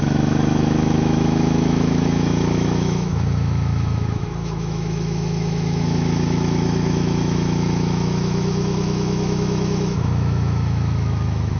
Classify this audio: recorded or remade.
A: remade